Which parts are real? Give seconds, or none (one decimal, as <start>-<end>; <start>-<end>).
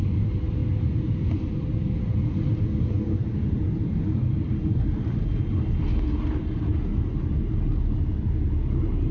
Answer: 0.0-9.1